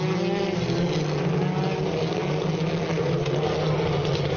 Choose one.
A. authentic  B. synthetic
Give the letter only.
A